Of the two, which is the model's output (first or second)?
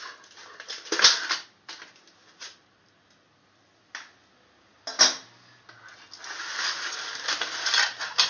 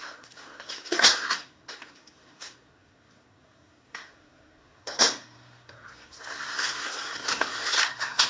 second